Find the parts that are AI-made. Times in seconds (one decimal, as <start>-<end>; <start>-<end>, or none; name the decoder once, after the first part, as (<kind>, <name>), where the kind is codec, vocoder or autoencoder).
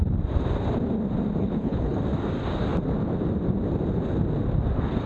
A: 1.4-2.0 (codec, HILCodec)